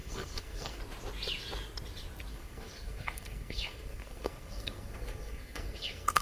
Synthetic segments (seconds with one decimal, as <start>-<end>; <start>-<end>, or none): 0.0-0.8; 2.3-6.2